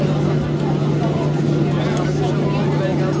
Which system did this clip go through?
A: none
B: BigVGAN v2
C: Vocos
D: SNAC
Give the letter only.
A